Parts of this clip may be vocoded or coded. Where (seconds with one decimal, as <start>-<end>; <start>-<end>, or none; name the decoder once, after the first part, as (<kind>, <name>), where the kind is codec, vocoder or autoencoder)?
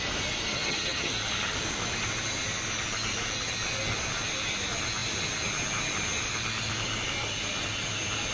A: 0.5-1.1 (vocoder, HiFi-GAN)